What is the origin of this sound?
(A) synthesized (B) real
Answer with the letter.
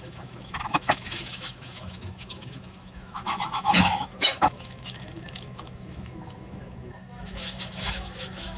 A